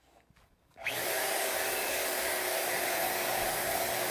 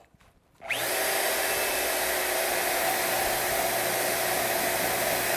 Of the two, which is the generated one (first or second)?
first